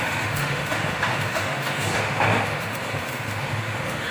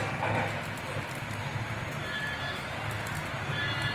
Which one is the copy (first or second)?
first